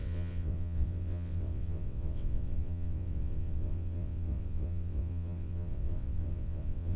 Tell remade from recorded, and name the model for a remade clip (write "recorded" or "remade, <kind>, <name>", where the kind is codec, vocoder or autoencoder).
remade, vocoder, WaveNeXt